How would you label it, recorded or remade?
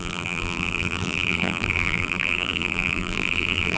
remade